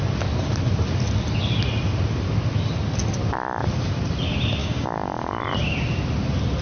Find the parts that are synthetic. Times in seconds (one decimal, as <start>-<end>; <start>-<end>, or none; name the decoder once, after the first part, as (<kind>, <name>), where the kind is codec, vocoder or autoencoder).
4.6-5.4 (codec, DAC)